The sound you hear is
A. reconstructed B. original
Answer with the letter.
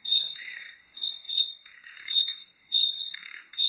A